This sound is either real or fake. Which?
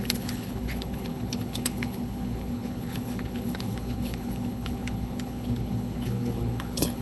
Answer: fake